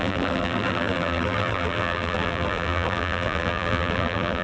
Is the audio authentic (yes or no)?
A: no